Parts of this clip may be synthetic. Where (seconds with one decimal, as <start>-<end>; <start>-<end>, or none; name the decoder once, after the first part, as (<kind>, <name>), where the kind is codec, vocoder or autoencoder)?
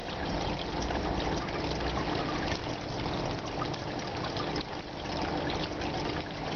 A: 0.0-1.6 (vocoder, BigVGAN v2)